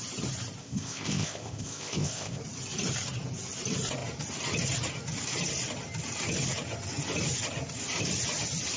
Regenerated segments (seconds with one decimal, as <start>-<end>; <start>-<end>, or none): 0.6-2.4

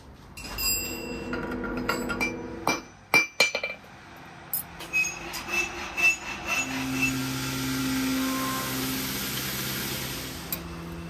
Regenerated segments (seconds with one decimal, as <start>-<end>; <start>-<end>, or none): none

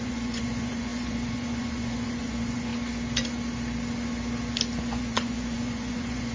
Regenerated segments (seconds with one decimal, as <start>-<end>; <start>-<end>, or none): 0.0-2.7; 4.8-6.3

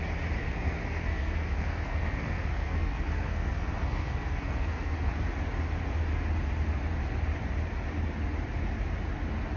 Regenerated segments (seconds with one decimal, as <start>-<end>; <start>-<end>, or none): 0.4-5.1

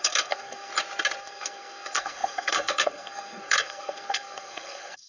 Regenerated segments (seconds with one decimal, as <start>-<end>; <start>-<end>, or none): 0.0-0.7; 1.2-5.1